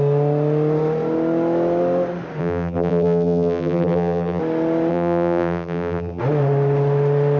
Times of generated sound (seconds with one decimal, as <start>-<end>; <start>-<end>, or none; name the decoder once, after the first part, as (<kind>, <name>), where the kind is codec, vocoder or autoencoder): 2.4-4.4 (vocoder, BigVGAN v2); 4.9-6.2

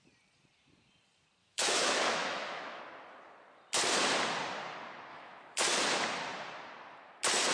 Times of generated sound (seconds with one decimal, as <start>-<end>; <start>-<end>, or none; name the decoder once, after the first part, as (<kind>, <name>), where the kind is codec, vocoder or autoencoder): 1.4-2.8 (autoencoder, DAC-VAE); 5.1-5.7

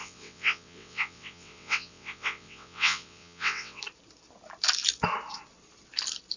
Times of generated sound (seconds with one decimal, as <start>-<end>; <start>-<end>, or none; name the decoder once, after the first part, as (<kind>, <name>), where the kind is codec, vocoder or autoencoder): 0.0-3.8 (vocoder, WaveNeXt)

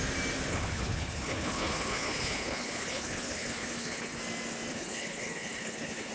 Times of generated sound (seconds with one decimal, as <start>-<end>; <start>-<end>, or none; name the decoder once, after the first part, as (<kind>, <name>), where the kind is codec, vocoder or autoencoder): 0.5-4.2 (codec, HILCodec); 4.7-6.1